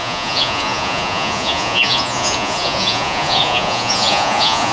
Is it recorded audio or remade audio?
remade